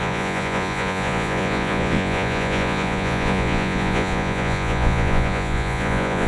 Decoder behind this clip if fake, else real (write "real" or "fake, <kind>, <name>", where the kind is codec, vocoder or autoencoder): fake, vocoder, Vocos